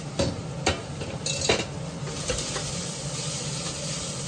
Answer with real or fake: real